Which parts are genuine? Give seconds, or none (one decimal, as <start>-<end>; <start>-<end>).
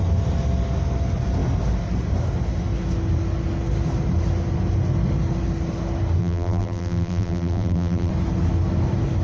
0.0-6.2; 8.1-9.2